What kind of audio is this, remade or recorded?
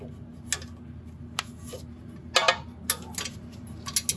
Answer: recorded